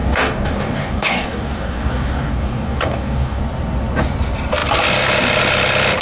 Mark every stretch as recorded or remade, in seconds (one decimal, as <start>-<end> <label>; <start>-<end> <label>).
0.0-3.4 remade; 3.4-6.0 recorded